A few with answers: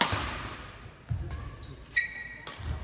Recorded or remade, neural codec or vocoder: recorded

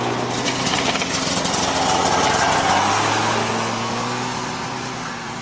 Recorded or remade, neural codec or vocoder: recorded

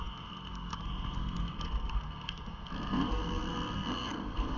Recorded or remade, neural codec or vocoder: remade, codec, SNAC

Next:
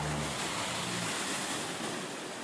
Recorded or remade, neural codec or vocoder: recorded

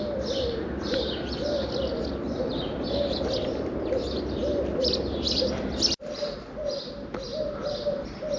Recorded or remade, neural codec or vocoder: recorded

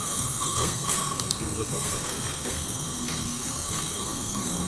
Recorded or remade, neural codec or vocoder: remade, codec, SNAC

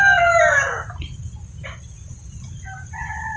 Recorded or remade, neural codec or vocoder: recorded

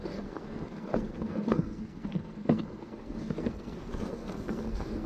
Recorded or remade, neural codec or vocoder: remade, codec, SNAC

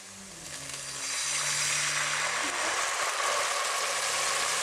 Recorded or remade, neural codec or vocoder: recorded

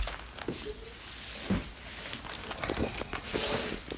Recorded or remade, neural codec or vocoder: recorded